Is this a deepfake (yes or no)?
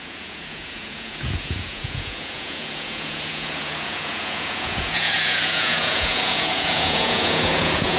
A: yes